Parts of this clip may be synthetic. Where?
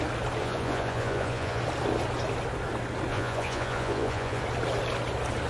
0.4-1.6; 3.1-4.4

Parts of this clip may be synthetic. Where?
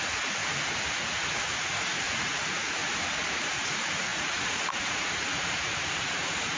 0.0-0.4; 0.9-2.8; 3.4-6.6